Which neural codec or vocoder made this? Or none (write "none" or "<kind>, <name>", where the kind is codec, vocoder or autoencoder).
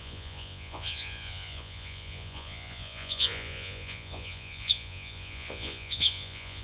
vocoder, Vocos